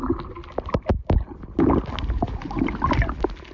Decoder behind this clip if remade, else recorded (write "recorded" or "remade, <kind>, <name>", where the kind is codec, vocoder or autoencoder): recorded